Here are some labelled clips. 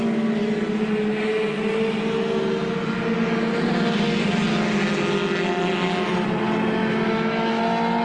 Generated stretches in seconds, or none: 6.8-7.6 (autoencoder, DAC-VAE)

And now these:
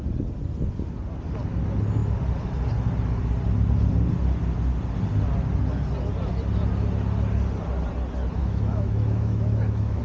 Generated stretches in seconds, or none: 8.4-10.0 (autoencoder, DAC-VAE)